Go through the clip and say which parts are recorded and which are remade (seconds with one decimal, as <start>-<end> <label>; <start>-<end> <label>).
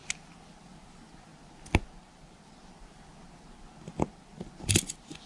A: 0.0-5.3 recorded